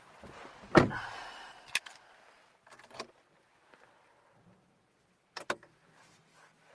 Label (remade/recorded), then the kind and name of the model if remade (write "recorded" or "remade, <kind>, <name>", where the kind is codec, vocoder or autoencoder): recorded